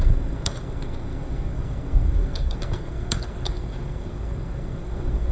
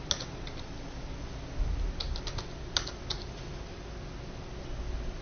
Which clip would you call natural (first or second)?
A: second